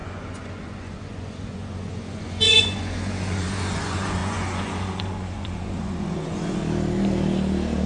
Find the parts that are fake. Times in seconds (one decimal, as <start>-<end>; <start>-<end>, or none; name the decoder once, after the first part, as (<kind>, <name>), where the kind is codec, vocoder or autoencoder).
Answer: 0.0-6.6 (vocoder, Vocos)